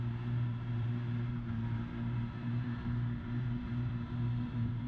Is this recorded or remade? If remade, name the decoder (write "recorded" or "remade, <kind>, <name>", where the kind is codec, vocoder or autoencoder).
remade, vocoder, BigVGAN v2